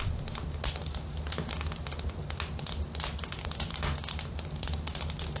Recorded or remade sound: recorded